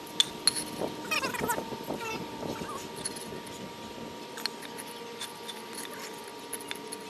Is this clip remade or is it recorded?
recorded